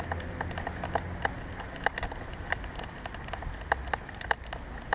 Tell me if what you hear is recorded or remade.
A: recorded